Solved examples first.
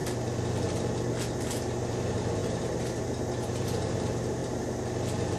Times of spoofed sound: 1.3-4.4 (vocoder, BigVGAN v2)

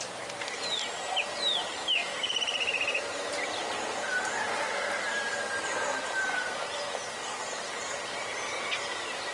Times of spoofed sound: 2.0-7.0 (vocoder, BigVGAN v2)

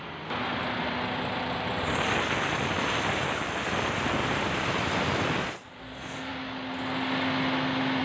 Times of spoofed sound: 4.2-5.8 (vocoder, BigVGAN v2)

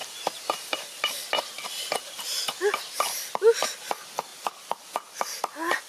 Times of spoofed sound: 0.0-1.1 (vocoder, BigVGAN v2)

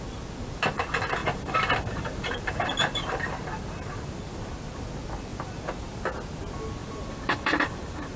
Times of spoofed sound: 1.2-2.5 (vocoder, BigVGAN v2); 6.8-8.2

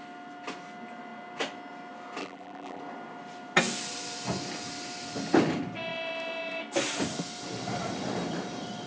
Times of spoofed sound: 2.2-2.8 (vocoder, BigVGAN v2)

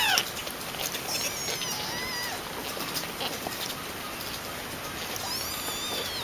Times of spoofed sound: none

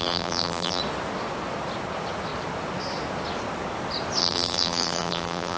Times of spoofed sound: 0.0-0.8 (vocoder, BigVGAN v2); 4.2-5.6